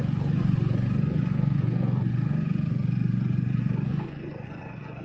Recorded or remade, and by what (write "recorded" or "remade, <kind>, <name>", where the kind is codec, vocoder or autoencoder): remade, vocoder, Vocos